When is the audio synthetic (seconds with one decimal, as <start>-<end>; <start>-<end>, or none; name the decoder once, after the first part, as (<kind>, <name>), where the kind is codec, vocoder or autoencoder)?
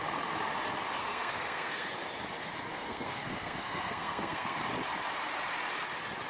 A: 1.0-1.9 (codec, SNAC); 2.7-4.6